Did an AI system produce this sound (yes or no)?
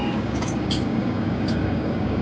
yes